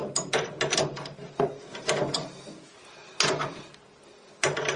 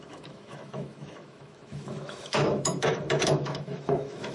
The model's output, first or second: second